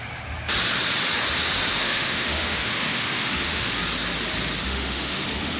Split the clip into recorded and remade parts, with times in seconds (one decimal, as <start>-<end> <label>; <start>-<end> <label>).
0.0-1.7 recorded; 1.7-3.7 remade; 3.7-4.6 recorded; 4.6-5.6 remade